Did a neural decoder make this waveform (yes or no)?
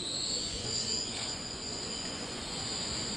yes